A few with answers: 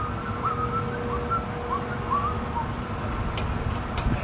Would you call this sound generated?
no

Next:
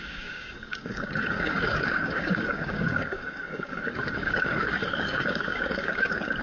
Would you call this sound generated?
yes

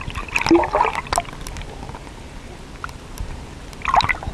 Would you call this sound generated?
no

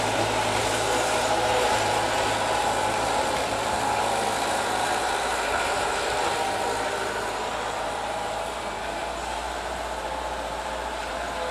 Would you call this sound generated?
yes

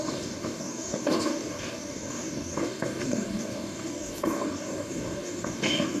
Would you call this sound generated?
yes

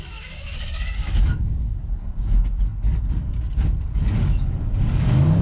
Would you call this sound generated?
yes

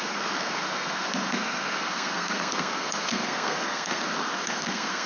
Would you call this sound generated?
yes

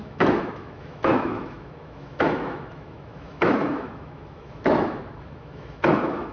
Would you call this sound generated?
yes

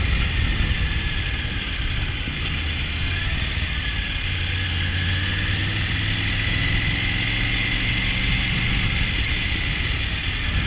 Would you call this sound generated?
no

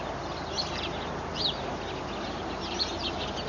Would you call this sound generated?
no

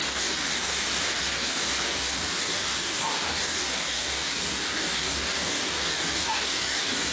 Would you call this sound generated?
yes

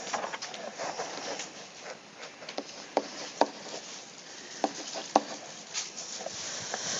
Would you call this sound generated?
no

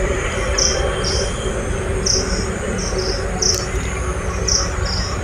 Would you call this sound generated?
no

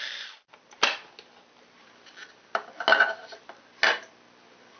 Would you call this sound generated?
no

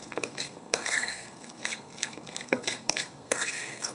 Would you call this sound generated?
yes